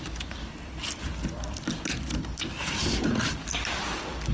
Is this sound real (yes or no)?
yes